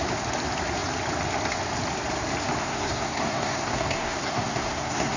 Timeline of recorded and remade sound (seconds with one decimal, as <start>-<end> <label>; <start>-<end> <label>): 0.0-2.6 recorded; 2.6-5.2 remade